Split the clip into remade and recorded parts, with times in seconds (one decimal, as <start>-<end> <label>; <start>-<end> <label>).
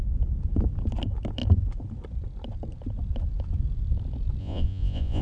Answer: 0.0-4.4 recorded; 4.4-5.2 remade